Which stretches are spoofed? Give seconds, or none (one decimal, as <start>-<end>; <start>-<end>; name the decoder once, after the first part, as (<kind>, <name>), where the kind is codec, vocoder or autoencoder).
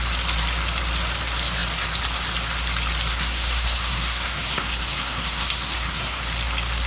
3.1-6.2 (codec, SNAC)